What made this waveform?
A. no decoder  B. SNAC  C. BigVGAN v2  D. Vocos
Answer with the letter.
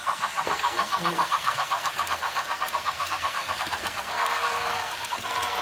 B